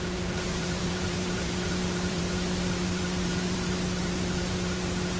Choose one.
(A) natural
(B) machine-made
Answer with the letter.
B